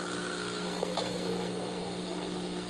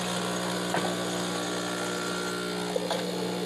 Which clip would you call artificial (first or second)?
first